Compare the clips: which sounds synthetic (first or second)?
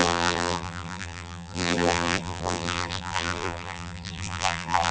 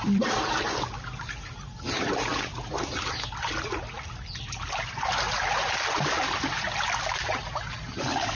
first